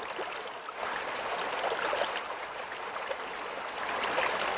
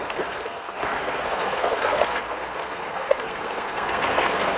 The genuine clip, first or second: first